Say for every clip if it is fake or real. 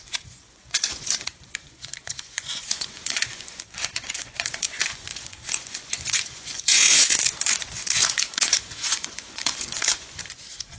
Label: fake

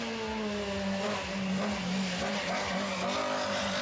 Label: real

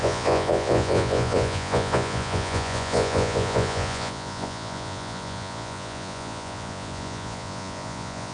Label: fake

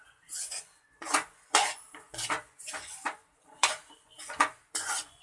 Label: fake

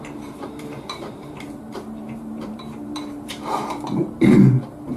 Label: fake